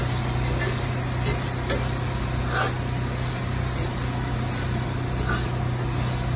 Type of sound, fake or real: real